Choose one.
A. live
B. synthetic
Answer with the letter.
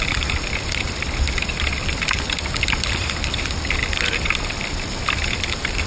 A